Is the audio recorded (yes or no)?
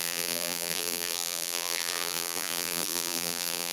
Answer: no